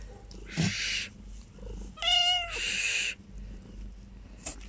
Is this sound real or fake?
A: real